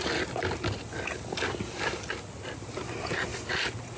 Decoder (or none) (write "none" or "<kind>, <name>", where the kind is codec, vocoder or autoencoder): none